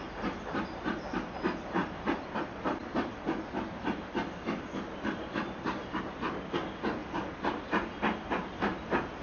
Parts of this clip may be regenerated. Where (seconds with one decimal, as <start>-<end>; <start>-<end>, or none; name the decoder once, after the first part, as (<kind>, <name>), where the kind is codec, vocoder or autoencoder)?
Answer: none